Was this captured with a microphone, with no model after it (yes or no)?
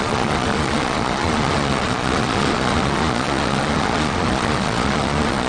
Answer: no